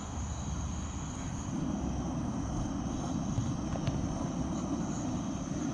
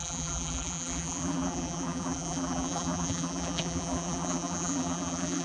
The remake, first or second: second